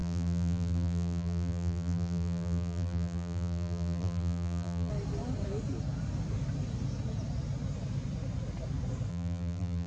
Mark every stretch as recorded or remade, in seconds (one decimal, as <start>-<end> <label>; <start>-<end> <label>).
0.0-4.9 remade; 4.9-9.1 recorded; 9.1-9.9 remade

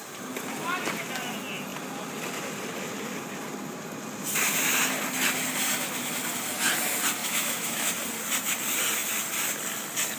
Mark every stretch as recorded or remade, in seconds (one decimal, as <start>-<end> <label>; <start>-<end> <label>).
0.0-7.2 recorded; 7.2-7.9 remade; 7.9-10.2 recorded